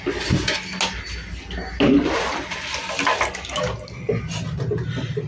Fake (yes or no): no